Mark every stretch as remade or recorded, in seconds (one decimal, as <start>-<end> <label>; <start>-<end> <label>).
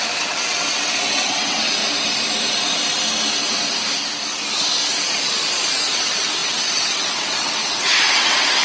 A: 0.0-1.8 remade; 1.8-5.7 recorded; 5.7-8.6 remade